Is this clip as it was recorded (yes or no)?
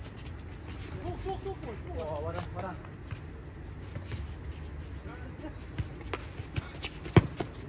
yes